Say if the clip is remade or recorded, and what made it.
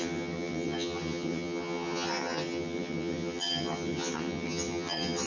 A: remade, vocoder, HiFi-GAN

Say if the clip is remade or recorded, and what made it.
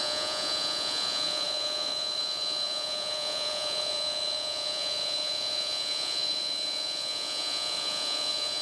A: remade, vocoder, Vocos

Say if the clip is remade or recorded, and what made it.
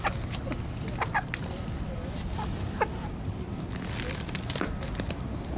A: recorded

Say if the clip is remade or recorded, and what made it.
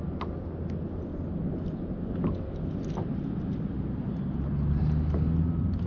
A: recorded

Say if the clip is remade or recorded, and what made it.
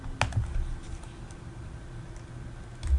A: recorded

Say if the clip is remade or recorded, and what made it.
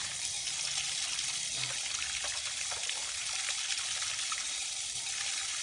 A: recorded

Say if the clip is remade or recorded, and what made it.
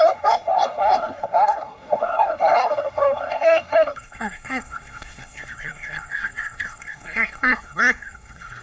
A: remade, codec, SNAC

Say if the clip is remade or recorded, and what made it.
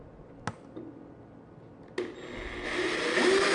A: recorded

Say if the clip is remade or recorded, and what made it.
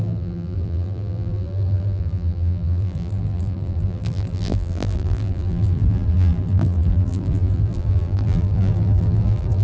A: remade, vocoder, BigVGAN v2